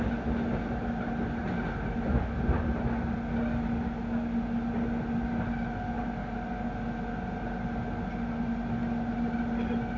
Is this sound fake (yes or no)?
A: no